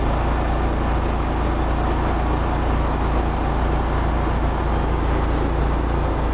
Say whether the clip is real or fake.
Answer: real